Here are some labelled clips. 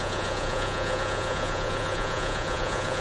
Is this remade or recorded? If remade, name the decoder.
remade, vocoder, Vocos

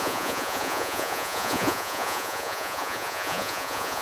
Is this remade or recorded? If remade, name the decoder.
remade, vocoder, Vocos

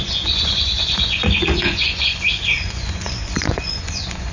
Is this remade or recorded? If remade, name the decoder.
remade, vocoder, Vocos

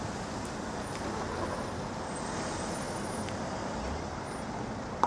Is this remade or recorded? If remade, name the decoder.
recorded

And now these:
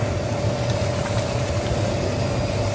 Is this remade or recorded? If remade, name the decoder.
recorded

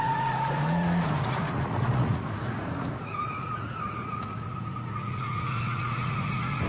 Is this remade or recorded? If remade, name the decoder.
remade, vocoder, Vocos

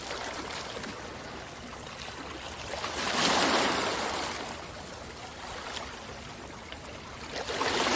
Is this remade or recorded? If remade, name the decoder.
recorded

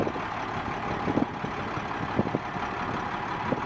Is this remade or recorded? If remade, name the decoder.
recorded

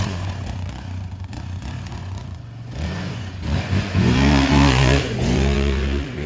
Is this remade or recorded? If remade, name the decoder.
remade, vocoder, Vocos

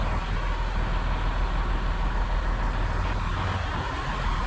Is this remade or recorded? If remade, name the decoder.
recorded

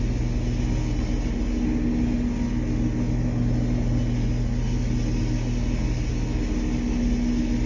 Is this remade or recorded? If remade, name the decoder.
recorded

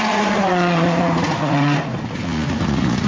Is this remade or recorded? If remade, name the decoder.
remade, vocoder, Vocos